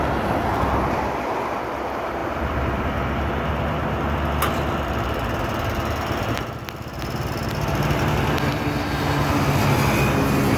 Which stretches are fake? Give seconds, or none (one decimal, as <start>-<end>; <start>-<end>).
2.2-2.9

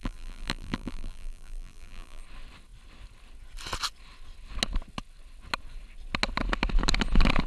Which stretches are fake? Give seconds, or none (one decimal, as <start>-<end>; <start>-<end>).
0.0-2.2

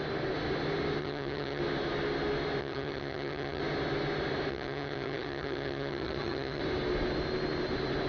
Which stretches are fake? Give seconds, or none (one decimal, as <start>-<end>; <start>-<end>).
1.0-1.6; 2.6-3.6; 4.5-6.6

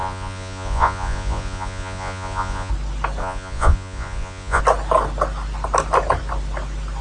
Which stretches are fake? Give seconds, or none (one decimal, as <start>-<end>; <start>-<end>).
0.0-2.7; 3.2-4.6

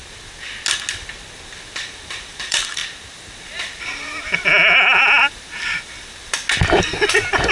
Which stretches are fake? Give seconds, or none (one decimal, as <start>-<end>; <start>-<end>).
1.8-2.8